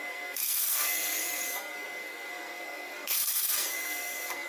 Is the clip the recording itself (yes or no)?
no